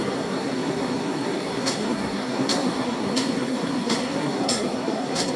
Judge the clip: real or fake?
fake